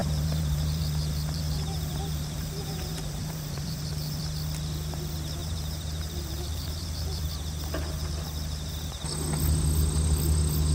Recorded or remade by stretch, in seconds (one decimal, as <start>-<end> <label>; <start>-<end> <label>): 0.0-4.2 remade; 4.2-5.4 recorded; 5.4-7.3 remade; 7.3-10.7 recorded